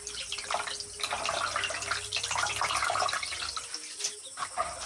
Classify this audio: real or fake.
real